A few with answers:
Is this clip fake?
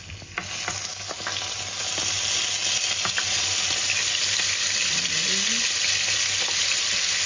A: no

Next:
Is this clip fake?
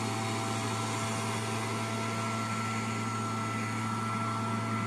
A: no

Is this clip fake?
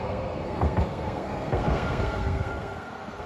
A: yes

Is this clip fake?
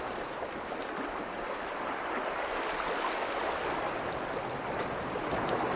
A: no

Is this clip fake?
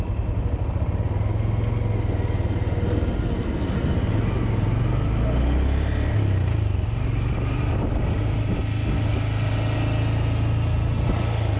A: no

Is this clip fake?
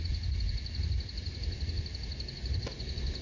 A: no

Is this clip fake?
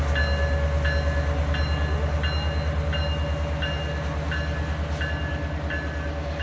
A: no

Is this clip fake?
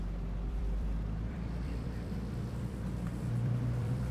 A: yes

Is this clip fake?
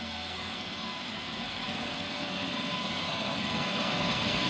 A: yes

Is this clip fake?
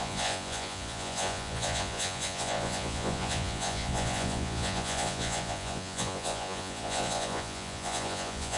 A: yes